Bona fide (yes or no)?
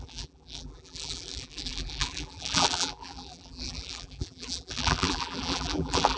no